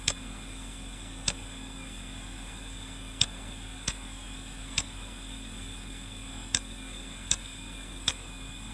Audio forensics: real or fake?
fake